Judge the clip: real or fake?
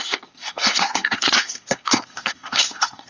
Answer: fake